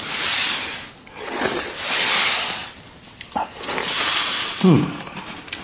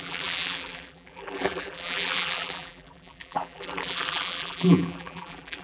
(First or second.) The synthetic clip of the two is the second